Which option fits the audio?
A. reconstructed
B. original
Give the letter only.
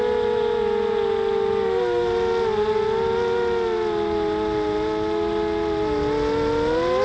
B